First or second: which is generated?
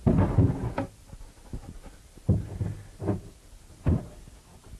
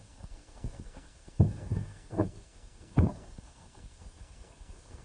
second